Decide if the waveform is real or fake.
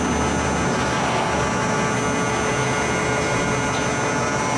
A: real